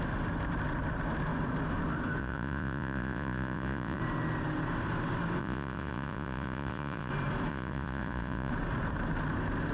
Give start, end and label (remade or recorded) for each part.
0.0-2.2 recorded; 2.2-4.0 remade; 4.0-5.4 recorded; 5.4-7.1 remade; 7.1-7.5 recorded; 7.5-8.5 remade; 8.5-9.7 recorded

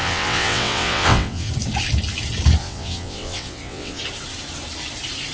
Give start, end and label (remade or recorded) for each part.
0.0-1.5 remade; 1.5-2.6 recorded; 2.6-4.0 remade; 4.0-5.3 recorded

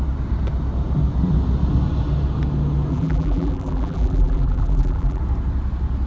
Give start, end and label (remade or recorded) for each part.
0.0-2.9 recorded; 2.9-5.2 remade; 5.2-6.1 recorded

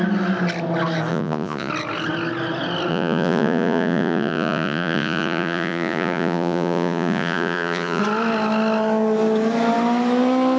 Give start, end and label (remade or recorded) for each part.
0.0-1.1 recorded; 1.1-1.7 remade; 1.7-2.9 recorded; 2.9-8.0 remade; 8.0-10.6 recorded